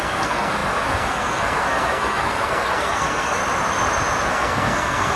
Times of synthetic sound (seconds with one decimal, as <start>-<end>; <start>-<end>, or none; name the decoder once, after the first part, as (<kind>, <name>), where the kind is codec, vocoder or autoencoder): 0.0-3.4 (codec, SNAC); 4.3-5.2